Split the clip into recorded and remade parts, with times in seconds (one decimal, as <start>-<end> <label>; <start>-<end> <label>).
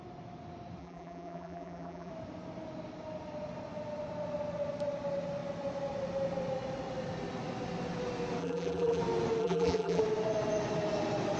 0.0-0.8 recorded; 0.8-2.1 remade; 2.1-8.4 recorded; 8.4-9.0 remade; 9.0-9.4 recorded; 9.4-10.0 remade; 10.0-11.4 recorded